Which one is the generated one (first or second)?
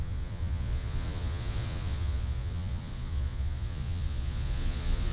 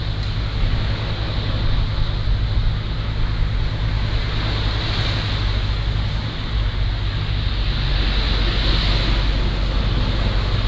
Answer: first